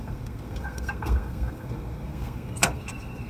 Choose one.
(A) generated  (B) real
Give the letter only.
A